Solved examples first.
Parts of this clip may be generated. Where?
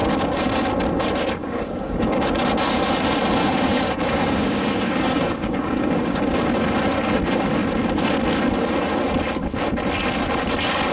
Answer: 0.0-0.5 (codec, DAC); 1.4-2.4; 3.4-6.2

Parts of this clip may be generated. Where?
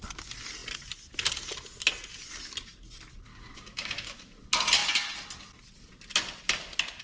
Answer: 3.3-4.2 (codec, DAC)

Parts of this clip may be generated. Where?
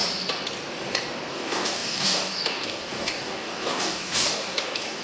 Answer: 1.3-5.0 (codec, DAC)